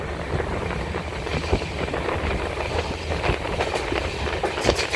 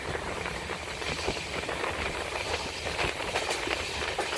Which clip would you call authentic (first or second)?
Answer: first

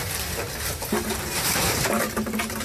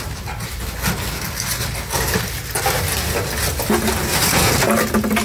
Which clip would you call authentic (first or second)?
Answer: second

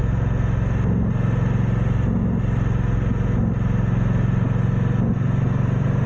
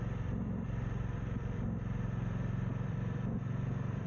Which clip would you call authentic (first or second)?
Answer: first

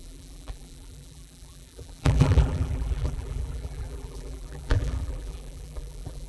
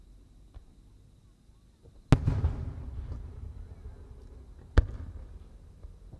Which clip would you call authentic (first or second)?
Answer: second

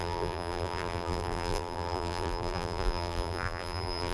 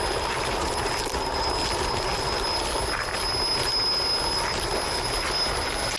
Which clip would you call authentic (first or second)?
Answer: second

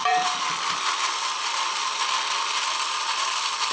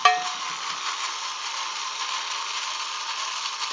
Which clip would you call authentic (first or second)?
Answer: second